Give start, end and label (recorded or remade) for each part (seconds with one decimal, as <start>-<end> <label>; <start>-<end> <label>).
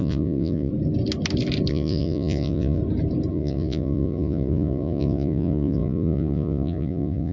0.0-0.7 remade; 0.7-1.7 recorded; 1.7-2.8 remade; 2.8-3.3 recorded; 3.3-7.3 remade